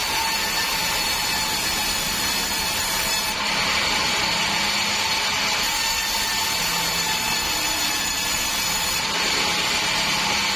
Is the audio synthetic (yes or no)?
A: no